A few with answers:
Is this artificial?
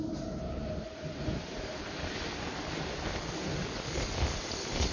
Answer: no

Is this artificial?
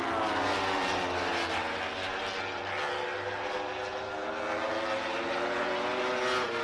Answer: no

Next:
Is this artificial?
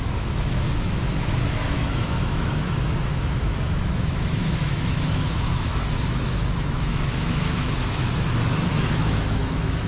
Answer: yes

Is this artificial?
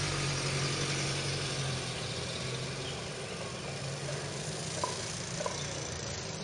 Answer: no